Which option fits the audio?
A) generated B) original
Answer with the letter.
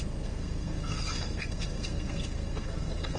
A